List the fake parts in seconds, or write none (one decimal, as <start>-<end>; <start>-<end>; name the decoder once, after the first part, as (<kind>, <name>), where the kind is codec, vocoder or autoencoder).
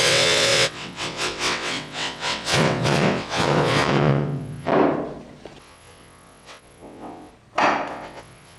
0.0-4.7 (vocoder, WaveNeXt); 5.6-7.3; 7.9-8.6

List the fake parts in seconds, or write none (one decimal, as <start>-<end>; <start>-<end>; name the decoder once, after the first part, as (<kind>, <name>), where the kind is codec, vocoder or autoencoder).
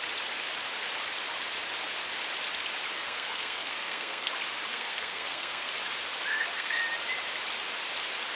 3.0-4.3 (codec, SNAC); 4.7-5.7; 6.3-6.8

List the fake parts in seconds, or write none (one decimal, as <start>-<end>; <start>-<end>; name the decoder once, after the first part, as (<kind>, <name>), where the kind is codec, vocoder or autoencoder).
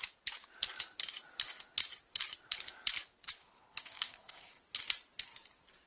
3.7-4.5 (codec, DAC)